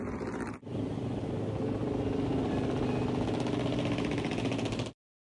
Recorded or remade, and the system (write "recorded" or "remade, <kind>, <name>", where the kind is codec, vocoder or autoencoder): recorded